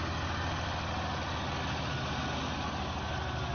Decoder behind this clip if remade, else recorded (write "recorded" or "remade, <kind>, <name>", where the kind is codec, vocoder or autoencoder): recorded